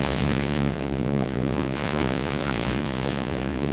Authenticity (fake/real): fake